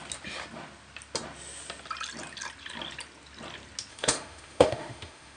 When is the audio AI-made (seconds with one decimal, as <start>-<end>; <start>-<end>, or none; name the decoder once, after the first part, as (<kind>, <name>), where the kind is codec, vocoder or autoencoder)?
3.9-5.4 (autoencoder, DAC-VAE)